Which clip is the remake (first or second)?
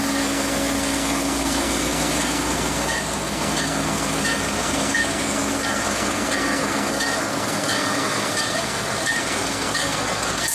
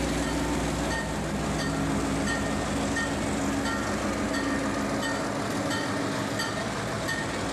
first